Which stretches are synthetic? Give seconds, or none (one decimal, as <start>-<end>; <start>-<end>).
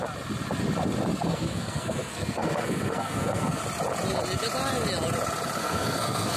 1.3-3.6; 5.6-6.4